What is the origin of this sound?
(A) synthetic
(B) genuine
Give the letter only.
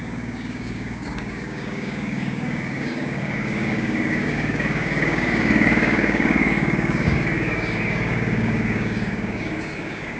A